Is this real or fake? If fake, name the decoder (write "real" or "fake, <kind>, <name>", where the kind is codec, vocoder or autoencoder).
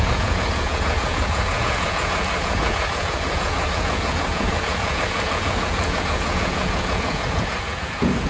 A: fake, vocoder, Vocos